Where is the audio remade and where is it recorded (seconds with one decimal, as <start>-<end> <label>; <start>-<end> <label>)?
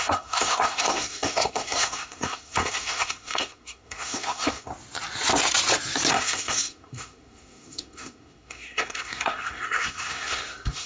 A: 0.0-4.7 remade; 4.7-6.1 recorded; 6.1-10.9 remade